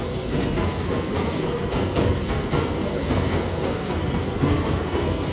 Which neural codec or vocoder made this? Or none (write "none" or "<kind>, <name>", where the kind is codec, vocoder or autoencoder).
codec, SNAC